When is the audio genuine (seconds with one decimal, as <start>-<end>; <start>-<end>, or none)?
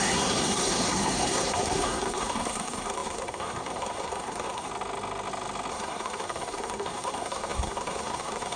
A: 4.7-5.7